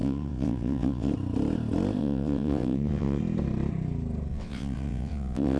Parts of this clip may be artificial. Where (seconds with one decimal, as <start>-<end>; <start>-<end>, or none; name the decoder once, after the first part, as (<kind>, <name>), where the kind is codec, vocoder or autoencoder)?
0.0-1.1 (vocoder, WaveNeXt); 2.0-3.2; 4.3-5.6